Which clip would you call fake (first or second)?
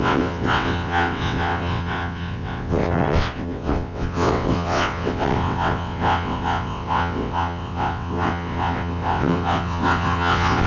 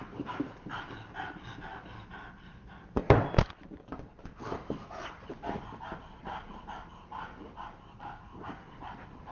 first